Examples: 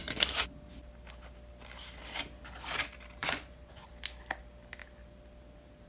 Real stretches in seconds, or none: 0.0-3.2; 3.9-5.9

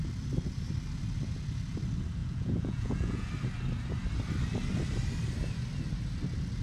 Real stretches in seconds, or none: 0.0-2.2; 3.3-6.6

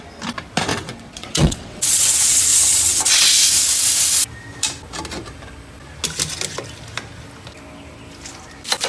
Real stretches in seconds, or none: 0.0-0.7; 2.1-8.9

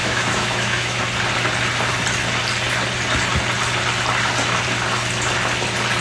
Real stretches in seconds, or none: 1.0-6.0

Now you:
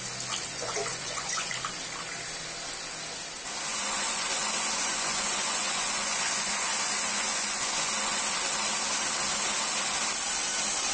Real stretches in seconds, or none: 0.0-0.5; 1.5-3.7; 8.2-10.9

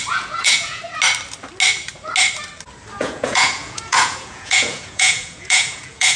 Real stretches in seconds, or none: 0.8-3.0